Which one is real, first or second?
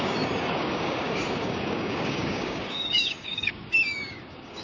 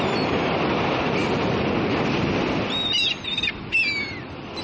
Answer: second